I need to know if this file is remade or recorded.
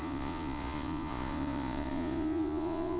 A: remade